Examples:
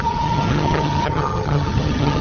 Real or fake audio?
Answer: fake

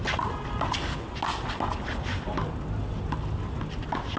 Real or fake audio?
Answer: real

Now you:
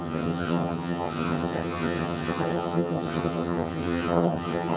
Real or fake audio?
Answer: fake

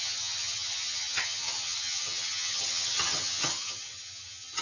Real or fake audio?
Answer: fake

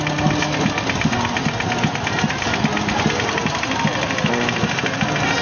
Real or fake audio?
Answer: real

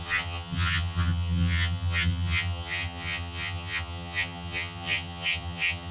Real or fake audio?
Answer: fake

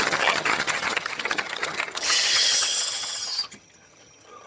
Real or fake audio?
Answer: fake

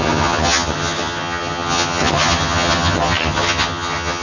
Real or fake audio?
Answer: fake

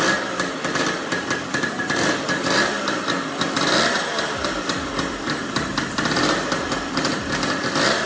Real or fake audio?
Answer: real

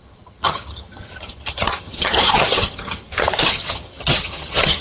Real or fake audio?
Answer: fake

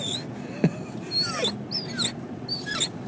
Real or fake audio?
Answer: real